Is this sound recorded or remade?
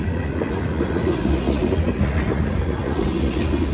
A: remade